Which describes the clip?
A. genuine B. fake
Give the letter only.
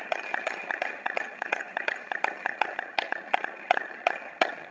B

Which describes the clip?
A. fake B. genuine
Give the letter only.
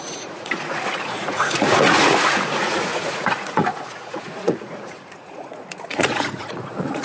A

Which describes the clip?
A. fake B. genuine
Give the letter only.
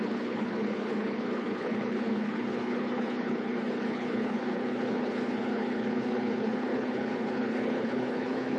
A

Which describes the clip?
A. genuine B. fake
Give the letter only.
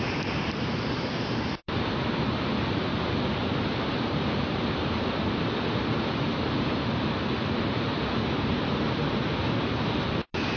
B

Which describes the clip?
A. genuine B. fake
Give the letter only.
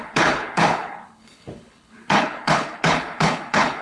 B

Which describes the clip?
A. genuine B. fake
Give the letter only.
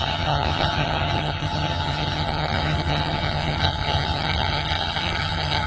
B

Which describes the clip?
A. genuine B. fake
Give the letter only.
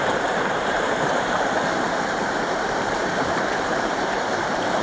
B